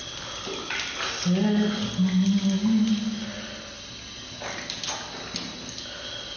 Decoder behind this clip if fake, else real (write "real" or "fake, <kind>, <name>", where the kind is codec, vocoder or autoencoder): real